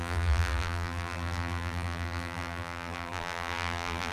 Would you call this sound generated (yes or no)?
yes